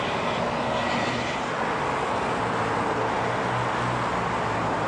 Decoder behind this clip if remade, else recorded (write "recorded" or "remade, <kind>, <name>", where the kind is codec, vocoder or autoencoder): recorded